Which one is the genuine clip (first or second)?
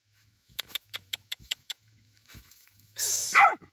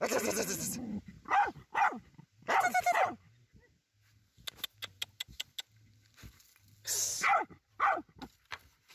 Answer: second